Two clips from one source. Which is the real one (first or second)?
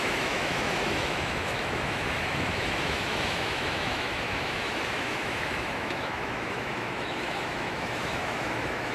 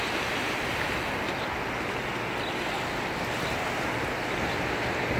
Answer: second